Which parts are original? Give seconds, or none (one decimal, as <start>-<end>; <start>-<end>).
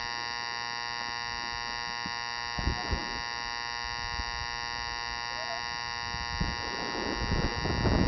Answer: 0.0-8.1